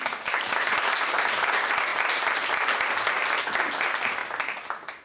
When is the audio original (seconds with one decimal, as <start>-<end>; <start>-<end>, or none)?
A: 0.0-5.0